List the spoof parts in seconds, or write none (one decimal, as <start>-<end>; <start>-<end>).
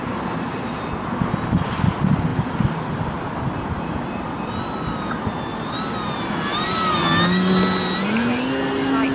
2.3-3.8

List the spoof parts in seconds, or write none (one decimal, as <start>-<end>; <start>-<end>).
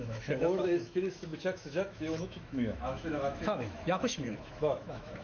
0.0-5.2